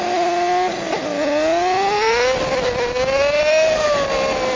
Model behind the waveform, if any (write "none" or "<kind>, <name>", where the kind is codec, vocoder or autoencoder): none